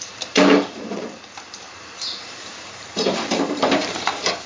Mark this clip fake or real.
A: fake